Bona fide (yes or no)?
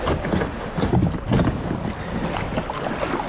yes